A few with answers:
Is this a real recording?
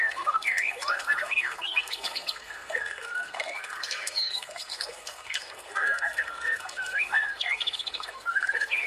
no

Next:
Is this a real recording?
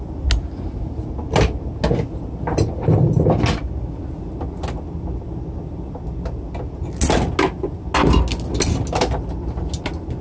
yes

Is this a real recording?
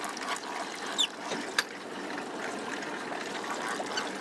yes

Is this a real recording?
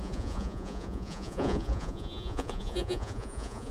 no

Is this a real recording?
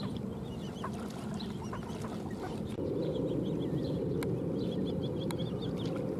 yes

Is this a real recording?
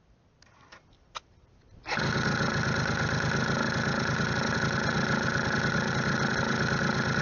yes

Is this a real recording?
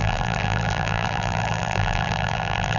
no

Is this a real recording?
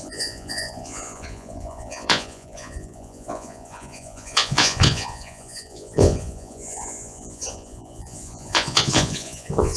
no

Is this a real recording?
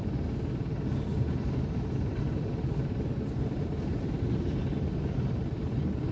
no